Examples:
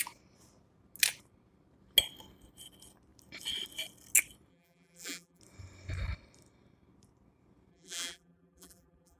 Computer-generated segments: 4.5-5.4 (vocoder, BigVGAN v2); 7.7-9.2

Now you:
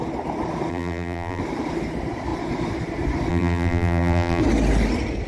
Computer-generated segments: 0.7-1.4 (vocoder, BigVGAN v2); 3.3-4.4

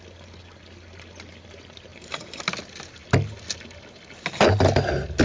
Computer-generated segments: 1.9-2.4 (vocoder, BigVGAN v2)